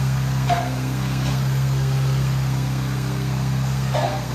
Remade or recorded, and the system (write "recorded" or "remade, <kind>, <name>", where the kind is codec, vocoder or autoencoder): remade, codec, SNAC